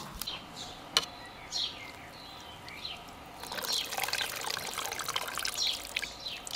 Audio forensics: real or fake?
real